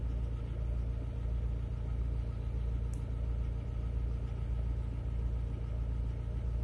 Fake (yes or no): no